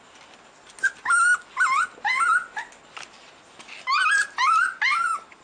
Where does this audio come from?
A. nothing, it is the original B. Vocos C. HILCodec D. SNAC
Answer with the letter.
A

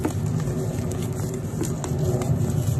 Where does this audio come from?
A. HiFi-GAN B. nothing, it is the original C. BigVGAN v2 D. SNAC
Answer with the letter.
B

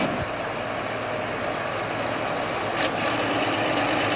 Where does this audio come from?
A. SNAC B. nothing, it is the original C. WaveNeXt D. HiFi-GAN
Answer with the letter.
B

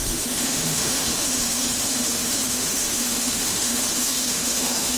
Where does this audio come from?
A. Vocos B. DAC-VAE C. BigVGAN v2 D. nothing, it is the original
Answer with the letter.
B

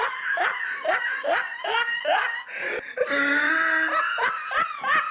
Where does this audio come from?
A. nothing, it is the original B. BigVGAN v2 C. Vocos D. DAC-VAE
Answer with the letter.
A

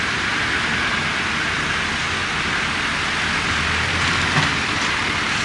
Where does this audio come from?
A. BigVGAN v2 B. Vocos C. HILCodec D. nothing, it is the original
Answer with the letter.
D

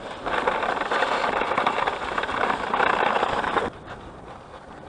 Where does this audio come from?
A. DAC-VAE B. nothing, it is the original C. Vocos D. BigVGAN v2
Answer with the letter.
D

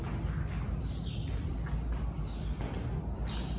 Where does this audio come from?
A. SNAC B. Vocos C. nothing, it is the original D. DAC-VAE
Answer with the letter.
C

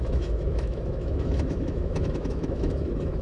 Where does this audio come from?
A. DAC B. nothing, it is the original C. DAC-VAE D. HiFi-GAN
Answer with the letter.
C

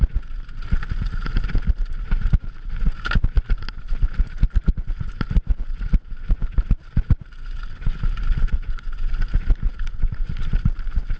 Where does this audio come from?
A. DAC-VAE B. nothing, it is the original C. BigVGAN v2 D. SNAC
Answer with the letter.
B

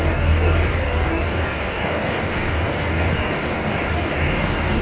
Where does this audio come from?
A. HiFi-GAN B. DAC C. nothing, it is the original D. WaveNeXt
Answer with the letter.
B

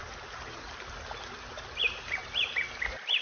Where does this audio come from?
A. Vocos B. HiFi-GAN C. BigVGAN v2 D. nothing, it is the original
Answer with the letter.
D